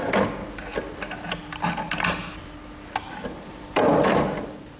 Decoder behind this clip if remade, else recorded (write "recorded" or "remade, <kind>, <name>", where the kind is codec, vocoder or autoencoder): recorded